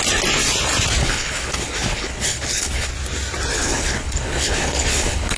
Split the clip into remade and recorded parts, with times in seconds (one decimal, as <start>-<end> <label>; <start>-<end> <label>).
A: 0.0-1.0 recorded; 1.0-2.9 remade; 2.9-3.5 recorded; 3.5-5.4 remade